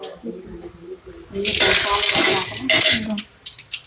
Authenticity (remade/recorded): recorded